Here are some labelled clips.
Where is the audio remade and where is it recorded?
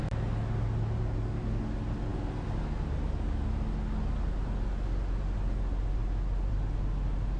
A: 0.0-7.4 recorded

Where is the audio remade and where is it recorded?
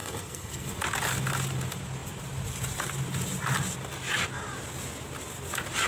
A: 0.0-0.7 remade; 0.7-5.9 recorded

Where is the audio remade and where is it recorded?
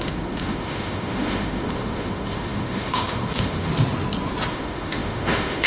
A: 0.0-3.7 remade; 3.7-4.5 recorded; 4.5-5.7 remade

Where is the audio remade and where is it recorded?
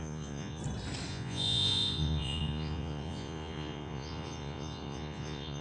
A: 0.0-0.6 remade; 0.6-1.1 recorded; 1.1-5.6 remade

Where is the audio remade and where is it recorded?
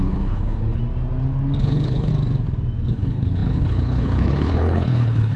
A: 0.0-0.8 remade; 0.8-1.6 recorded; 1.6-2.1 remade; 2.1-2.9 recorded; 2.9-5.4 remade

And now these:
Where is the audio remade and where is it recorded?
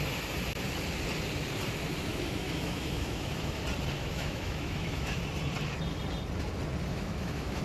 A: 0.0-2.1 recorded; 2.1-3.6 remade; 3.6-4.0 recorded; 4.0-5.2 remade; 5.2-6.9 recorded; 6.9-7.6 remade